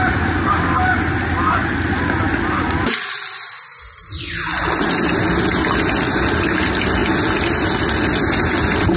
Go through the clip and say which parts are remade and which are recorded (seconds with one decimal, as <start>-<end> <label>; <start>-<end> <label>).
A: 0.0-9.0 recorded